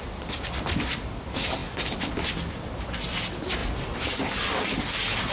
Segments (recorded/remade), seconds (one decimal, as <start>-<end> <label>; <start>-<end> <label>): 0.0-5.3 recorded

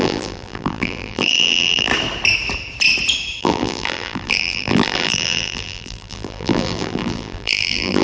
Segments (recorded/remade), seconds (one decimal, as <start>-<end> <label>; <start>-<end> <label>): 0.0-1.9 remade; 1.9-3.4 recorded; 3.4-8.0 remade